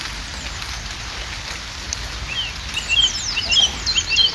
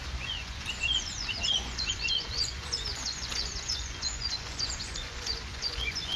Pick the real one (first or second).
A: first